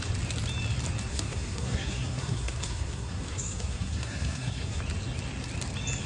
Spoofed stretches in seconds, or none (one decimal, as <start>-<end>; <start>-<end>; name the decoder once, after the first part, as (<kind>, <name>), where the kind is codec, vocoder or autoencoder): 1.1-4.8 (codec, SNAC)